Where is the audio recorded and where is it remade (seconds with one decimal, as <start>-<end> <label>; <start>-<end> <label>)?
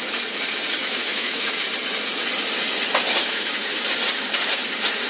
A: 0.0-0.8 recorded; 0.8-1.5 remade; 1.5-3.2 recorded; 3.2-3.8 remade; 3.8-5.1 recorded